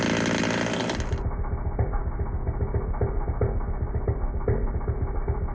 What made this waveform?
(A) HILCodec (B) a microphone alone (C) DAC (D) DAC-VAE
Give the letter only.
B